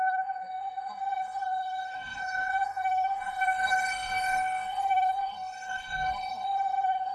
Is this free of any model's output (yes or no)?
no